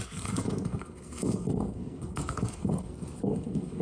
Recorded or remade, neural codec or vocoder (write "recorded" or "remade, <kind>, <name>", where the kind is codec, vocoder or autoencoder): remade, codec, SNAC